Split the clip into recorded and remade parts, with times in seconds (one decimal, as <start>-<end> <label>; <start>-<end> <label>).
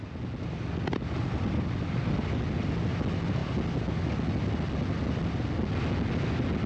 0.0-1.2 recorded; 1.2-2.7 remade; 2.7-6.7 recorded